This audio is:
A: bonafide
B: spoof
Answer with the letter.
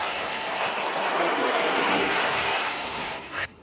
B